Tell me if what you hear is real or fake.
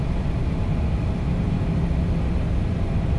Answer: real